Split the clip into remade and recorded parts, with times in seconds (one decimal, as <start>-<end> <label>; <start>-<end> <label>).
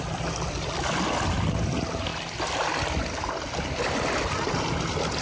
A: 0.0-5.2 recorded